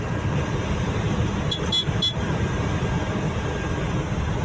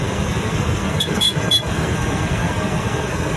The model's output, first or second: second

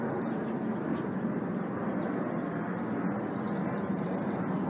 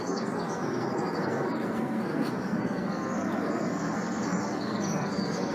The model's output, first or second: second